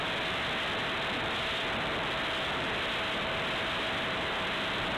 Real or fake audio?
real